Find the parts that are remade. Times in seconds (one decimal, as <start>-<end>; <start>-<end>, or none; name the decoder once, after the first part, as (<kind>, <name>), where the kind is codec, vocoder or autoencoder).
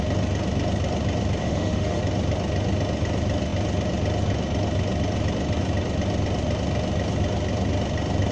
1.4-2.0 (autoencoder, DAC-VAE)